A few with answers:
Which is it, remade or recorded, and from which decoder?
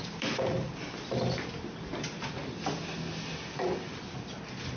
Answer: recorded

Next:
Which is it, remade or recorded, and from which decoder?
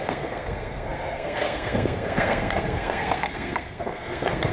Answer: remade, codec, SNAC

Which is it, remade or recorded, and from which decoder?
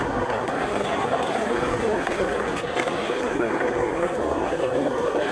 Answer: remade, codec, SNAC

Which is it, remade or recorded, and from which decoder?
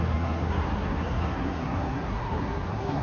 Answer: remade, codec, SNAC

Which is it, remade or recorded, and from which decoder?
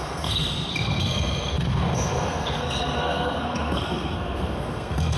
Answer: remade, codec, SNAC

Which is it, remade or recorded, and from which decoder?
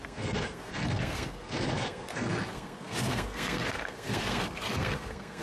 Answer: remade, codec, SNAC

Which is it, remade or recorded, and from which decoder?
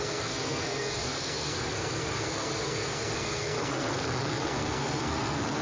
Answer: remade, codec, SNAC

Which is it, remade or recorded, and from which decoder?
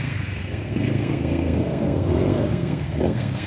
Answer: remade, codec, SNAC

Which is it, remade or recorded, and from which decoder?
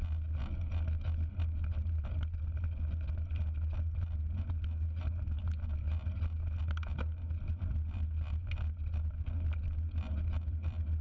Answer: recorded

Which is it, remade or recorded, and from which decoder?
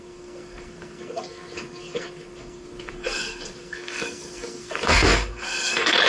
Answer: remade, codec, SNAC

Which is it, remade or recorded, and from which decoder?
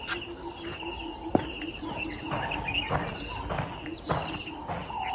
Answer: recorded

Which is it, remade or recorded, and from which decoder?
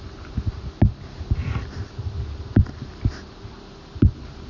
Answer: recorded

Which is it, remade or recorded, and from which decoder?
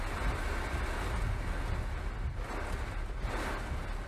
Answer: recorded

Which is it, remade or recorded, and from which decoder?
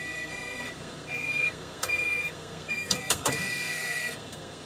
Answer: remade, codec, SNAC